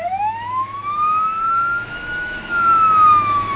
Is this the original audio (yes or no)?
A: no